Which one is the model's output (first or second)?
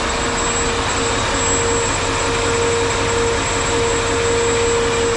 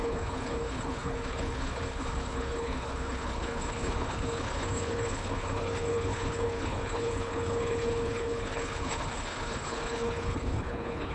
second